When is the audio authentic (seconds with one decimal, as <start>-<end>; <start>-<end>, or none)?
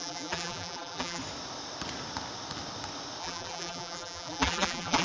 1.2-3.2